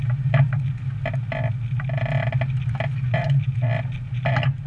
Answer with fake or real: real